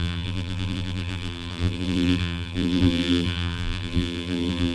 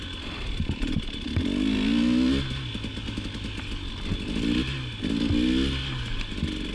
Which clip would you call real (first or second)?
second